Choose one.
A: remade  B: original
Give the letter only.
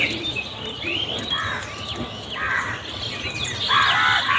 B